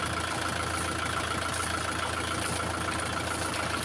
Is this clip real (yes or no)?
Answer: yes